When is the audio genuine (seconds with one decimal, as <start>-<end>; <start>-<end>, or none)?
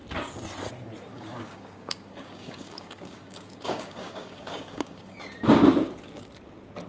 0.0-1.1; 5.2-6.9